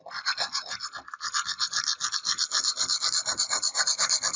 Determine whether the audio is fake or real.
real